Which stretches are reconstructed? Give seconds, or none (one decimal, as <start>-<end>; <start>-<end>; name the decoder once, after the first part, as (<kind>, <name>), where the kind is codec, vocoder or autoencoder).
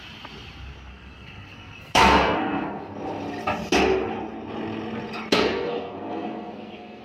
0.9-2.8 (codec, SNAC); 5.3-7.0